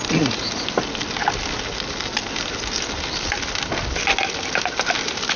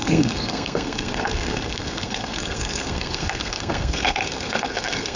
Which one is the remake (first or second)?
second